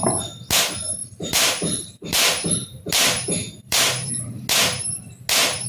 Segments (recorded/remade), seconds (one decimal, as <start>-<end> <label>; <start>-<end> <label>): 0.0-1.0 recorded; 1.0-4.4 remade; 4.4-5.7 recorded